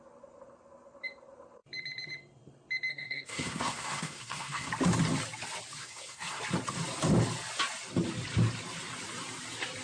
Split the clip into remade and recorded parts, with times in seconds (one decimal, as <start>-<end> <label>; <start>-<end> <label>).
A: 0.0-2.9 recorded; 2.9-4.7 remade; 4.7-5.8 recorded; 5.8-6.4 remade; 6.4-9.8 recorded